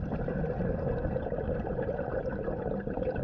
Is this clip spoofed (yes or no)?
no